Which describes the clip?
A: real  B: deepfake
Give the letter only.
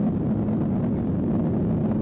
A